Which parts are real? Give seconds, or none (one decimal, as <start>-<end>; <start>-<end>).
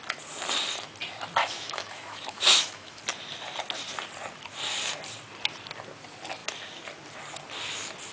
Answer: 0.0-1.4; 3.0-8.1